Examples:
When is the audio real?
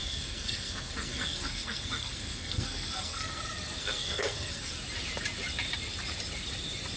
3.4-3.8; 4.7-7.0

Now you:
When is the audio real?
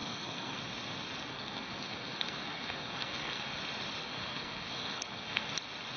0.6-1.3; 3.6-4.0; 5.5-6.0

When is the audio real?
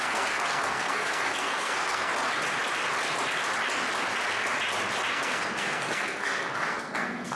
2.1-5.1